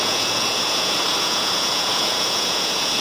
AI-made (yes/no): yes